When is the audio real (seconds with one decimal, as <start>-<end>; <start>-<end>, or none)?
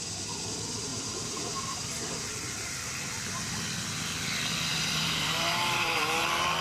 0.0-0.9; 3.3-4.7; 6.0-6.6